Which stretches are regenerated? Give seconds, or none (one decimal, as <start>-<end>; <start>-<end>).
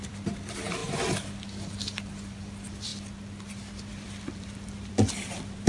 0.0-0.8; 1.7-2.9; 3.9-5.7